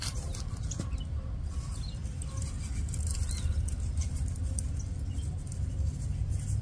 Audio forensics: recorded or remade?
recorded